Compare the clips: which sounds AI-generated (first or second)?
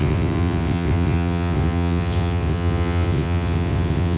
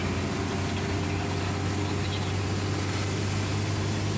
first